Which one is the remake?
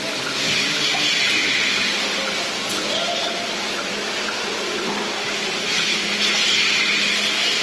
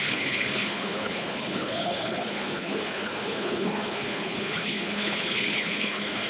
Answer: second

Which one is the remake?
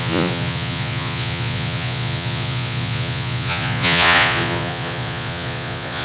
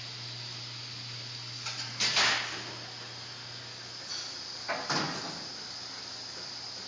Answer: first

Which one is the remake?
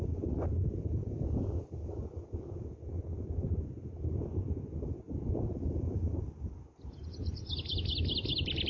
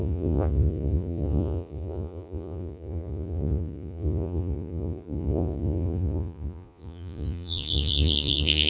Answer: second